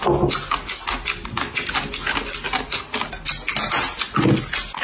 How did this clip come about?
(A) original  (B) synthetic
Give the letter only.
A